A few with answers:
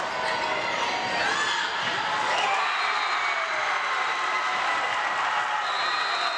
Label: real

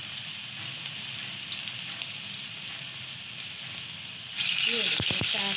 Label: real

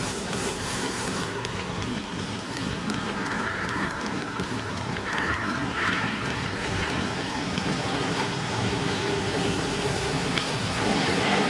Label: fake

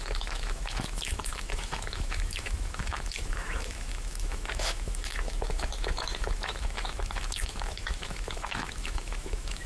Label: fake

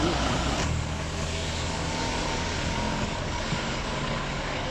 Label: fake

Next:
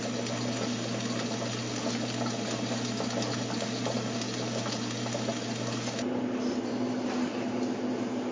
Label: real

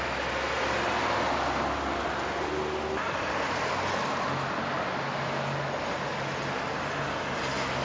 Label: real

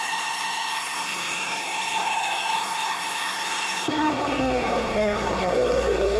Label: fake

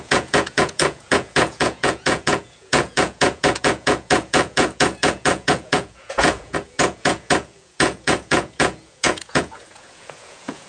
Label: fake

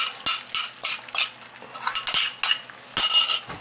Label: real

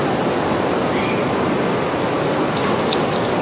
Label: real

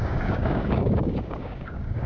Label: fake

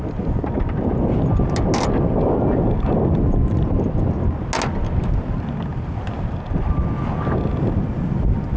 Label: real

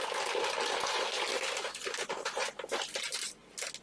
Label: real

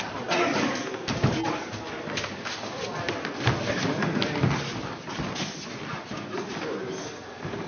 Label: real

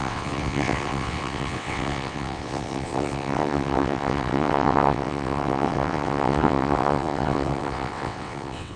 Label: fake